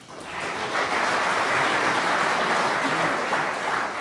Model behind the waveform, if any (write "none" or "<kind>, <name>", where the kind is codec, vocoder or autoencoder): none